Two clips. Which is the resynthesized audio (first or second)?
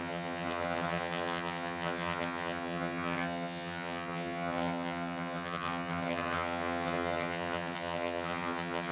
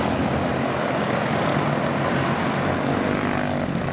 first